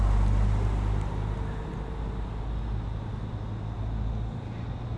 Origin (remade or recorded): recorded